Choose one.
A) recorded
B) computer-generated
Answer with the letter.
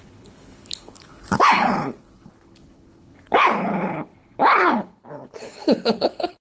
B